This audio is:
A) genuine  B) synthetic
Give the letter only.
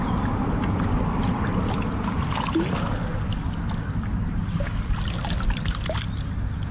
A